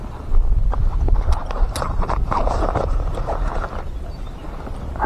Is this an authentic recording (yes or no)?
yes